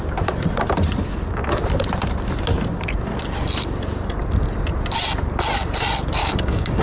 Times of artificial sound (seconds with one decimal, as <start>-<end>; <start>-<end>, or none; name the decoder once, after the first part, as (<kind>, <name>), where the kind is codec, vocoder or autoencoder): 6.2-6.8 (codec, DAC)